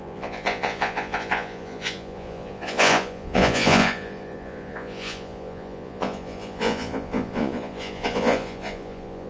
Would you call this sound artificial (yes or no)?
yes